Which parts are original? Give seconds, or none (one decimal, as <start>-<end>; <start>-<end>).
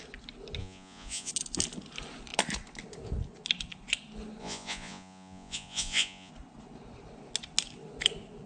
0.0-0.6; 1.3-4.4; 6.3-8.5